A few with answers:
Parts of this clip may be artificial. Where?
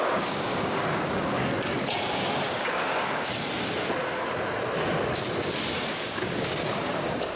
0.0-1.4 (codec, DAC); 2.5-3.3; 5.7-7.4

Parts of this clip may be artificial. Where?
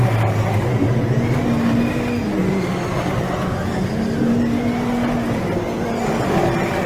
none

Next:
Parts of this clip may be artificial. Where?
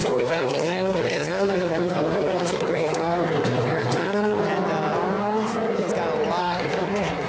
0.0-4.4 (codec, SNAC); 5.2-5.9; 6.4-7.3